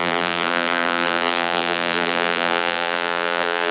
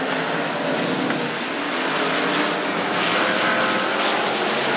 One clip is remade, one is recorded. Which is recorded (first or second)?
second